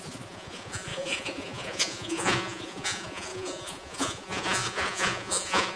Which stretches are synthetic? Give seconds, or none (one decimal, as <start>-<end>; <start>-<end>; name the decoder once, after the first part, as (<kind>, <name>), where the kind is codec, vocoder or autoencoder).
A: 0.0-5.8 (vocoder, Vocos)